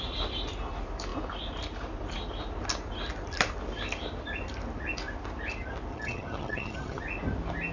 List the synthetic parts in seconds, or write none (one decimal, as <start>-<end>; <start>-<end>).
5.9-7.0

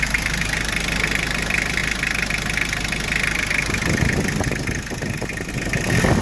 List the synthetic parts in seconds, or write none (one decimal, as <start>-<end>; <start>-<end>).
0.0-1.8; 5.5-6.2

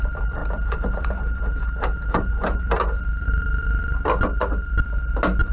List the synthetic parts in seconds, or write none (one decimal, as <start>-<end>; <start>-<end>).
0.4-2.7

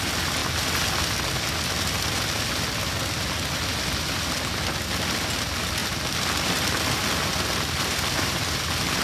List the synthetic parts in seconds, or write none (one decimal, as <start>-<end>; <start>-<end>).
5.8-6.9; 7.9-8.6